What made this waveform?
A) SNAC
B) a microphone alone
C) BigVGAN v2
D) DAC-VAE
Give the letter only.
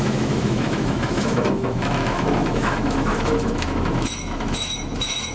D